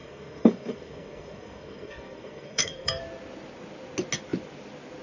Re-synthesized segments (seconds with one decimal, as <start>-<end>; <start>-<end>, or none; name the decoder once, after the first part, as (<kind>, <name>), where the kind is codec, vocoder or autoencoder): 0.0-3.0 (codec, SNAC)